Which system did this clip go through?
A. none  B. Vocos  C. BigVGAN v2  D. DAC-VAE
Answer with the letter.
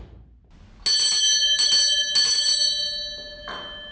A